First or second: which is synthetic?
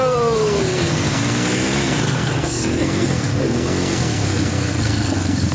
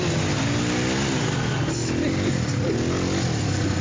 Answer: first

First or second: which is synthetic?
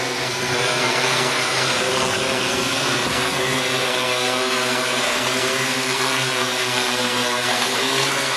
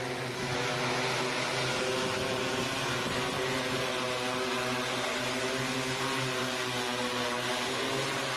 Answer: first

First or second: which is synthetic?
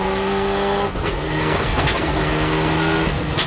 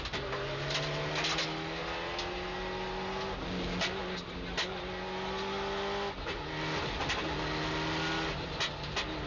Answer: first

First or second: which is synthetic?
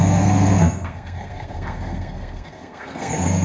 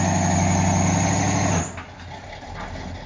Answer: first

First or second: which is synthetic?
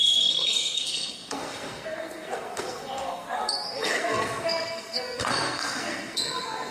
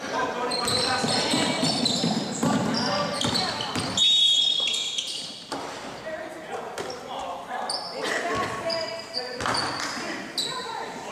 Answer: first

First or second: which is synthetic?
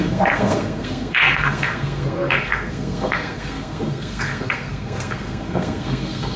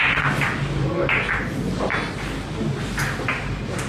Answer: first